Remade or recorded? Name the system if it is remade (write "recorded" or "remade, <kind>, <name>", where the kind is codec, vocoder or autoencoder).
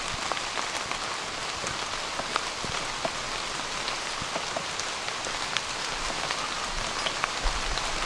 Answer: recorded